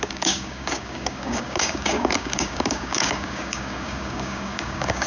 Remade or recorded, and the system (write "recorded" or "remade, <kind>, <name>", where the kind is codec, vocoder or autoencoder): remade, codec, DAC